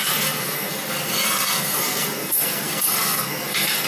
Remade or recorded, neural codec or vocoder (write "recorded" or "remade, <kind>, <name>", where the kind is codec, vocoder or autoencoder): remade, codec, SNAC